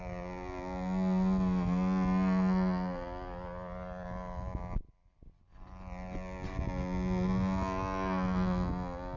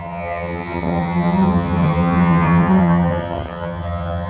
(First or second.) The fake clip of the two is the second